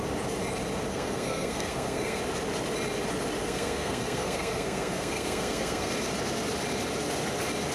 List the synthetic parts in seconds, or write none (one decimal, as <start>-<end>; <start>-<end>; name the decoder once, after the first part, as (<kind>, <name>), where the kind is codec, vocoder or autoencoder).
0.9-2.2 (codec, SNAC); 3.4-5.9